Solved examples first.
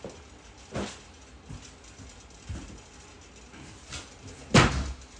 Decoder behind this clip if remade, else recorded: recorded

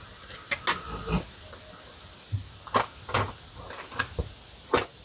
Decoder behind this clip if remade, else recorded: recorded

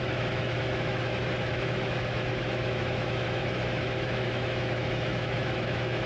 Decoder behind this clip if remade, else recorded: remade, autoencoder, DAC-VAE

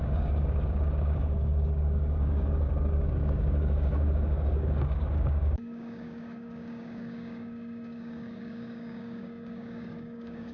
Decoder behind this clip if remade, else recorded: remade, codec, DAC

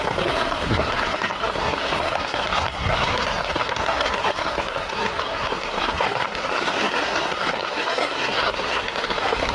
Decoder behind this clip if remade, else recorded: remade, codec, SNAC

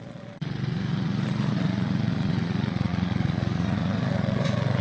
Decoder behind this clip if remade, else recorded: remade, vocoder, Vocos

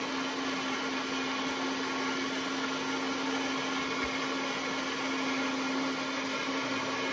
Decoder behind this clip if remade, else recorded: recorded